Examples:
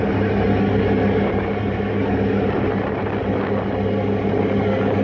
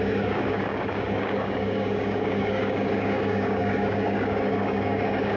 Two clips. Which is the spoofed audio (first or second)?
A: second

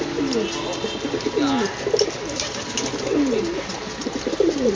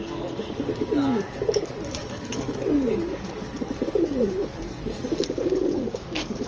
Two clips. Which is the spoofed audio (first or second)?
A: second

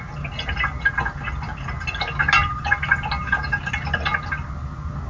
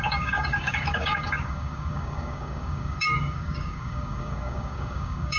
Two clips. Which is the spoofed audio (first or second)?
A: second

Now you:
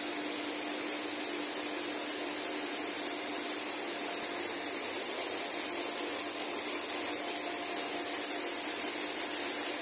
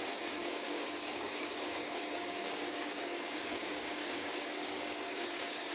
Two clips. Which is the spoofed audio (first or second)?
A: second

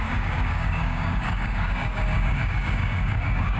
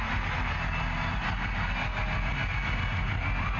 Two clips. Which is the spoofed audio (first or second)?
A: first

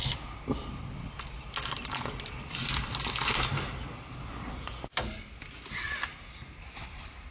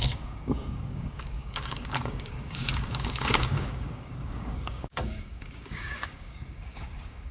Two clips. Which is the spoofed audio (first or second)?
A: second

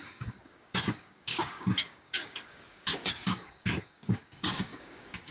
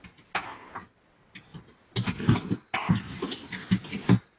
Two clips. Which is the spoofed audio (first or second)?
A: first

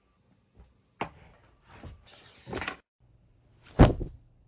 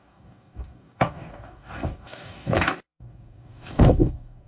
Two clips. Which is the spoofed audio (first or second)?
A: second